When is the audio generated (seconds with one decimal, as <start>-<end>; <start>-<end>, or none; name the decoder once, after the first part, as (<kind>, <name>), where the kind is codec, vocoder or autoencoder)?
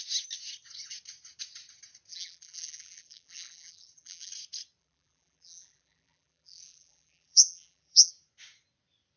2.1-4.3 (vocoder, BigVGAN v2); 4.8-8.1